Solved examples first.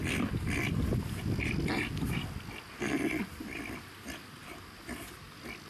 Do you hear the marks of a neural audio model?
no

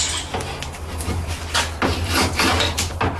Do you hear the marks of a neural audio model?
no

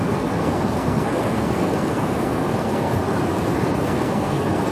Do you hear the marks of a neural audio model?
yes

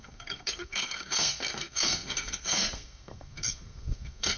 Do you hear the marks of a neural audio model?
yes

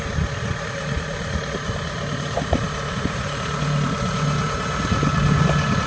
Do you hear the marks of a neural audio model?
no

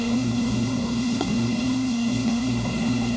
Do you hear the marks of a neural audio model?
yes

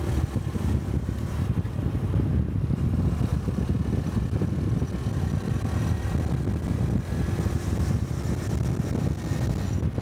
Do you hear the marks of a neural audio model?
no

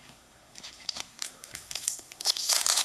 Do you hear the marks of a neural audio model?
yes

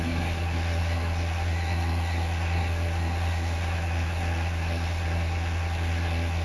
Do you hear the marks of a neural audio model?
yes